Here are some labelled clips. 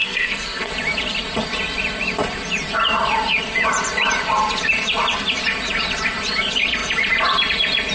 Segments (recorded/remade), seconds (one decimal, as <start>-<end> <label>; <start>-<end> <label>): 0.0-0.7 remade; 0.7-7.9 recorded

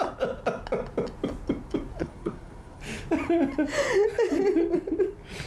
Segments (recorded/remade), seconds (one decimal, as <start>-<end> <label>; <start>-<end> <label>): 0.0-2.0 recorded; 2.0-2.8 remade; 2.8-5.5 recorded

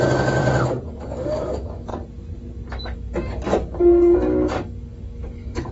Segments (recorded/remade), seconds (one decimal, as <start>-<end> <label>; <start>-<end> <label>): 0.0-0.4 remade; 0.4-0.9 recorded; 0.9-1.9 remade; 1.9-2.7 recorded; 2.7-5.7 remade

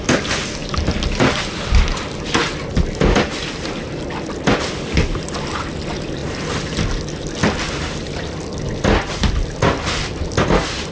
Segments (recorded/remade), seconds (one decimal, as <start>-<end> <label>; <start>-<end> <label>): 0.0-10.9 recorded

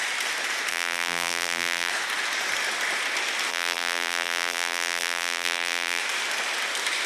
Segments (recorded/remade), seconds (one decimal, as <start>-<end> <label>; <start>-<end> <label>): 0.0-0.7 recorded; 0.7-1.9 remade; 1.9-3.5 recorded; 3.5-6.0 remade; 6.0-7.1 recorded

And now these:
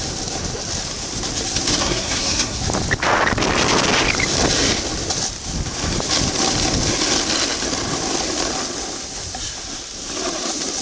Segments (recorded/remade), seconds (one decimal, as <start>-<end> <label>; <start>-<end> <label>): 0.0-1.8 recorded; 1.8-2.6 remade; 2.6-10.8 recorded